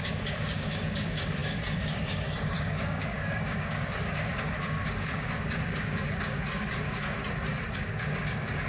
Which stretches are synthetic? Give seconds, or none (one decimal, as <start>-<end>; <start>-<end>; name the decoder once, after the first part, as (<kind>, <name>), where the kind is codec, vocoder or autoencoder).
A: 0.0-7.2 (codec, DAC); 7.7-8.7